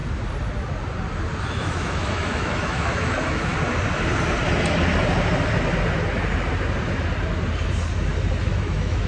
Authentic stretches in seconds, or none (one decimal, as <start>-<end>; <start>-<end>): 0.0-1.4; 3.5-8.4